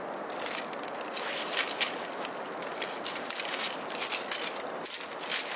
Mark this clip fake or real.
real